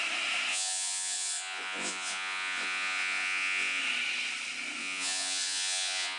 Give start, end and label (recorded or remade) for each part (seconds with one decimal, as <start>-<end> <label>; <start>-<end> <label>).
0.0-0.5 recorded; 0.5-3.8 remade; 3.8-4.8 recorded; 4.8-6.2 remade